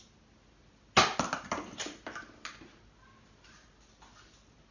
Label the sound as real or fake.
real